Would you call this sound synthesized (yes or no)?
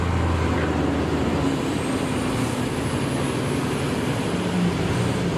no